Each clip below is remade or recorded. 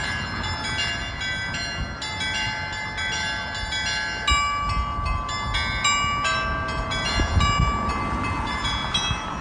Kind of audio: recorded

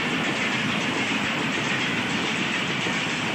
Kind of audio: recorded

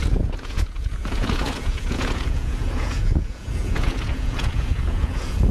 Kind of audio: remade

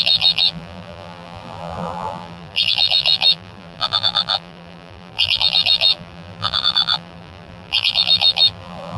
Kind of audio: remade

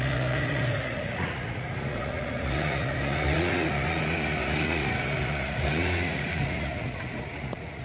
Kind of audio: remade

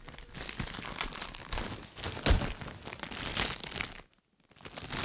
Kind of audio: recorded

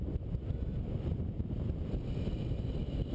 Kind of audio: remade